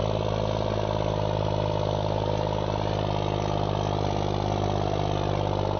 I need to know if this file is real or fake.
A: real